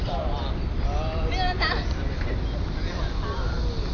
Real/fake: real